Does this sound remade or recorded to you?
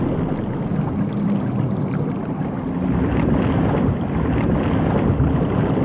recorded